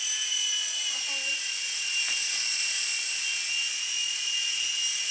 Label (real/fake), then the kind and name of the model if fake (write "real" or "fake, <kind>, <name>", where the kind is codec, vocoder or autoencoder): real